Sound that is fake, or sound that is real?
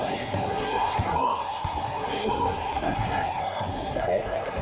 fake